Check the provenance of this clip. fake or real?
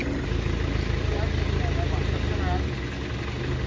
real